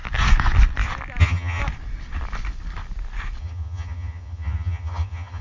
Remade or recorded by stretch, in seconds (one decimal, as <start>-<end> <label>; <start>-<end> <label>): 0.0-1.2 recorded; 1.2-1.6 remade; 1.6-3.4 recorded; 3.4-5.4 remade

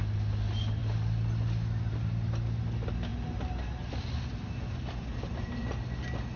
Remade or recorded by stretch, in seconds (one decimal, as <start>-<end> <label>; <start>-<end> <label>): 0.0-6.4 recorded